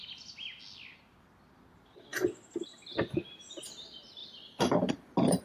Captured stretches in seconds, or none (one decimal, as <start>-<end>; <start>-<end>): 0.0-3.0

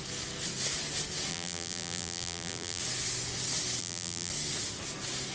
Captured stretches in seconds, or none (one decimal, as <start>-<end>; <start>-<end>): 0.0-1.3; 2.8-3.8; 4.3-5.3

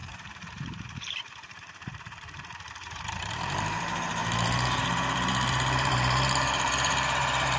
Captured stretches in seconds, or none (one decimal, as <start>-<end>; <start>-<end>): none

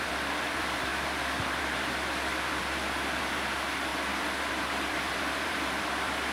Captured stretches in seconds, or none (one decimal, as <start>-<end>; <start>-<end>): 3.9-4.9

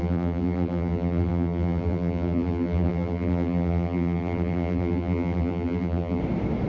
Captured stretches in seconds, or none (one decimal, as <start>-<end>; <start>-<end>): 6.2-6.7